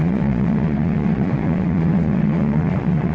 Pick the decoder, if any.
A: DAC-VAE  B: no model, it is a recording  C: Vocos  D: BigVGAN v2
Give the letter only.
C